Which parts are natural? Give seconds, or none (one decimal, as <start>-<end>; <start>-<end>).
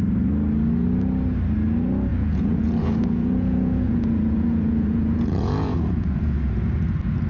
0.0-2.1; 6.5-7.3